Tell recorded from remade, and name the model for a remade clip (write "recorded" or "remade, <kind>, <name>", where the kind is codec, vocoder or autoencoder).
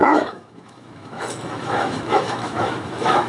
remade, autoencoder, DAC-VAE